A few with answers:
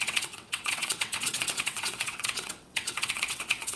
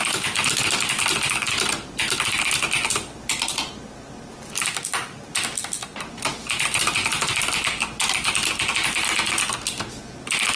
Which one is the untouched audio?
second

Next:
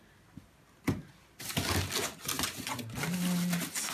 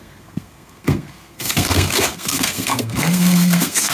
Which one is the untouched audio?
first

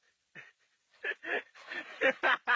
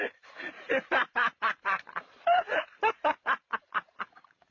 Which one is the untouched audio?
first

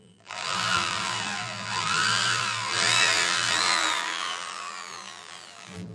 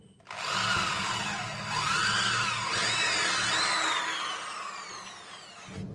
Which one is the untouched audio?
second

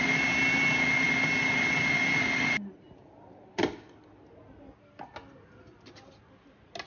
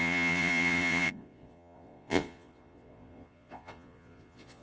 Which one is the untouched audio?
first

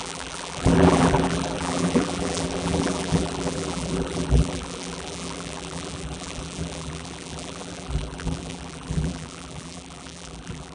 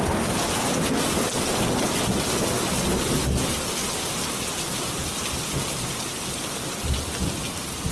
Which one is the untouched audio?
second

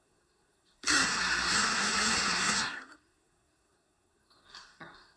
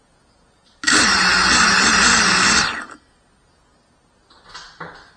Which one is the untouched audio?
second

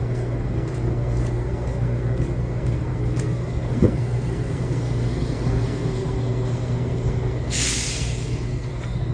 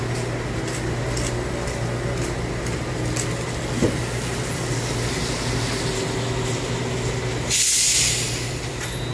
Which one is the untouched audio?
second